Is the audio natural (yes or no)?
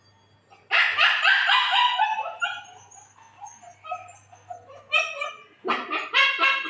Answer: yes